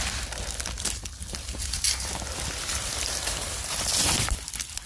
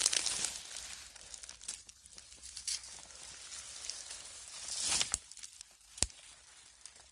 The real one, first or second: second